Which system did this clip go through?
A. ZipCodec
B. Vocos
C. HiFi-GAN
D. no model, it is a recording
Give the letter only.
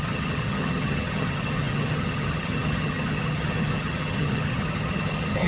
C